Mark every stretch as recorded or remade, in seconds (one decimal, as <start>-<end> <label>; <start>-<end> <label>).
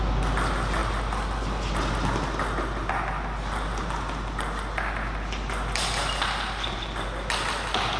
0.0-8.0 recorded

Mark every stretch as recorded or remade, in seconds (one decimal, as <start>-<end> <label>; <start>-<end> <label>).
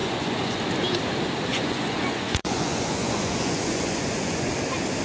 0.0-0.6 remade; 0.6-1.5 recorded; 1.5-4.5 remade; 4.5-5.0 recorded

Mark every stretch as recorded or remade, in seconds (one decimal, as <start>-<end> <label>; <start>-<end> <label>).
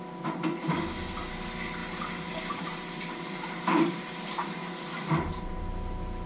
0.0-1.8 recorded; 1.8-5.6 remade; 5.6-6.3 recorded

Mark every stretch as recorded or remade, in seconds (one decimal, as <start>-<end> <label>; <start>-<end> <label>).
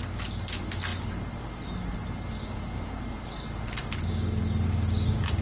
0.0-5.4 recorded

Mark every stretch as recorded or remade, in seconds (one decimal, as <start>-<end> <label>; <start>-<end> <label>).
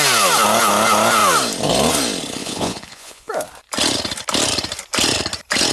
0.0-2.4 recorded; 2.4-3.3 remade; 3.3-5.7 recorded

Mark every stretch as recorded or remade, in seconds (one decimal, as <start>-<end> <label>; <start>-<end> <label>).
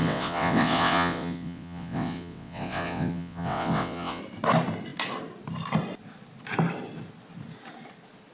0.0-4.2 remade; 4.2-8.3 recorded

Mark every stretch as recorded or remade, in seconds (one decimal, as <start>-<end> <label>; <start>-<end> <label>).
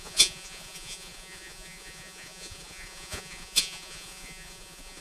0.0-5.0 remade